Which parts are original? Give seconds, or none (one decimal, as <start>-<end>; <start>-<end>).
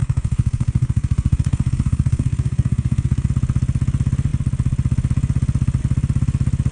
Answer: 3.3-6.7